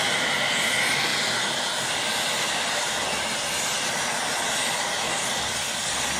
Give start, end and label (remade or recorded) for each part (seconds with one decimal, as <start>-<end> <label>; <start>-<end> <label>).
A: 0.0-1.1 recorded; 1.1-3.2 remade; 3.2-6.2 recorded